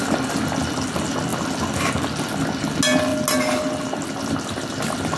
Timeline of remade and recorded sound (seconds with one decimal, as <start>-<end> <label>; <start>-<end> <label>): 0.0-5.2 recorded